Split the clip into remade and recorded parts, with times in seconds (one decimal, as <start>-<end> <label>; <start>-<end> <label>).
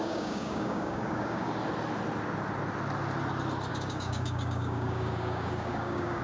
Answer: 0.0-1.5 remade; 1.5-3.7 recorded; 3.7-6.2 remade